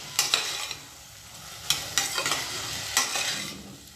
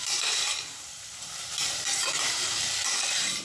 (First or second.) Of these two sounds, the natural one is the first